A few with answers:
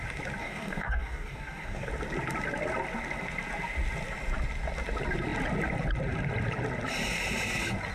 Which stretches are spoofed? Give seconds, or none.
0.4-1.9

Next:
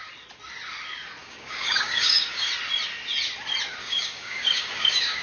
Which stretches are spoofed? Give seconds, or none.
1.2-2.5; 3.8-5.2

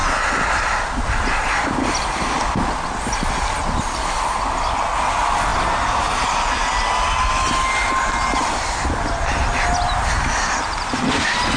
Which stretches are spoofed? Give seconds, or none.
0.0-1.2; 3.6-4.2

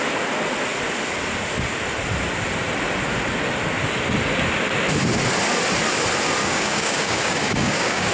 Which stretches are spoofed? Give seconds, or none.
6.4-8.1